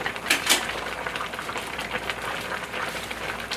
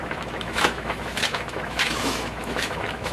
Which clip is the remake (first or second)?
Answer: second